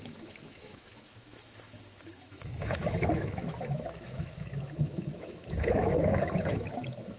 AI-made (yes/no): yes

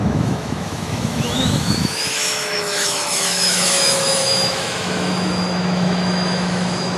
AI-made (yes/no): yes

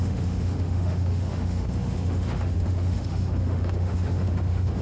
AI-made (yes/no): yes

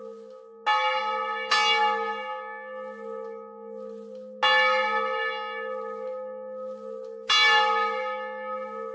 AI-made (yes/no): no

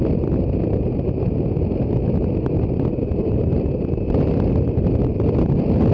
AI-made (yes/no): no